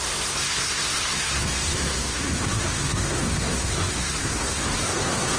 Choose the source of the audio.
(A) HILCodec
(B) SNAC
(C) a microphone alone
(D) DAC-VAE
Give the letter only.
B